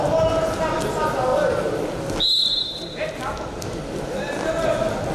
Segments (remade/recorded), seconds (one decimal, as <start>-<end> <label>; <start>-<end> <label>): 0.0-5.1 recorded